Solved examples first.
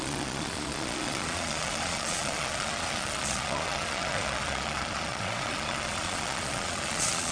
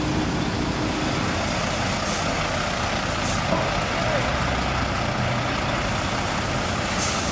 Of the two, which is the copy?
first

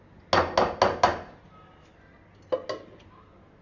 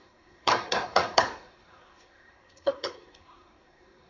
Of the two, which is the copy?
second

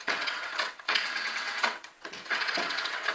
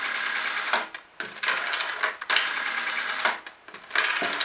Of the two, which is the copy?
first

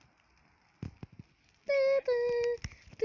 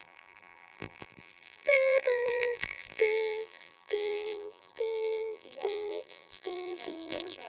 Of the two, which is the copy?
second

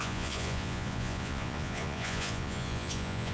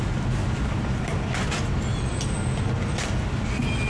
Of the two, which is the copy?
first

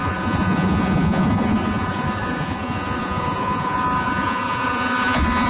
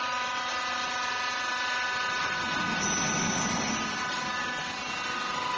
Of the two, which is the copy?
first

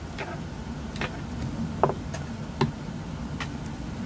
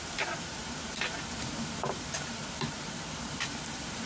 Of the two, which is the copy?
second